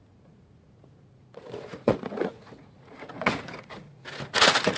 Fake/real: fake